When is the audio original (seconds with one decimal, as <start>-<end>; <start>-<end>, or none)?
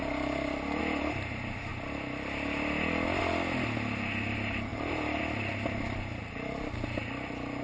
0.0-4.7; 5.2-7.6